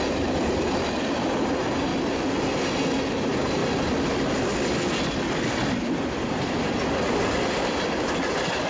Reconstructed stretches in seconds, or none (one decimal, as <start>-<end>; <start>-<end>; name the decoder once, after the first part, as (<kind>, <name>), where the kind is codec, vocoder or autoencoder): 0.0-1.9 (vocoder, BigVGAN v2); 3.1-3.6; 5.4-8.7